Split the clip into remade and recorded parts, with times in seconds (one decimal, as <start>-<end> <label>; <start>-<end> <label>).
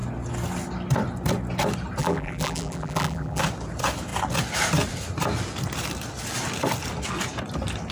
0.0-2.0 recorded; 2.0-3.4 remade; 3.4-7.9 recorded